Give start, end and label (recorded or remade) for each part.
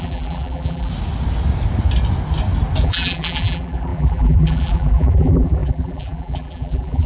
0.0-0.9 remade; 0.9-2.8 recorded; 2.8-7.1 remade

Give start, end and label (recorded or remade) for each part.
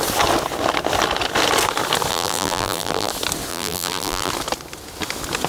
0.0-2.1 recorded; 2.1-3.1 remade; 3.1-3.5 recorded; 3.5-4.3 remade; 4.3-5.5 recorded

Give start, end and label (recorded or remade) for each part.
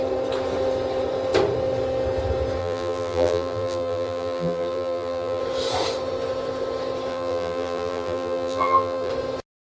0.0-2.6 recorded; 2.6-5.4 remade; 5.4-7.1 recorded; 7.1-9.1 remade; 9.1-9.6 recorded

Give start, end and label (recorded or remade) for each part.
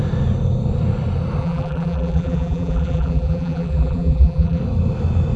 0.0-1.4 recorded; 1.4-4.6 remade; 4.6-5.4 recorded